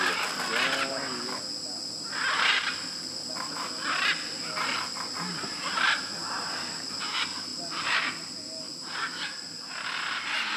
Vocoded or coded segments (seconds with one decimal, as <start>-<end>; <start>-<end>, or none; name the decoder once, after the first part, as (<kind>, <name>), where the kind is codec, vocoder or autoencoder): none